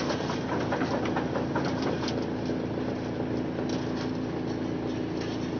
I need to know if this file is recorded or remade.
recorded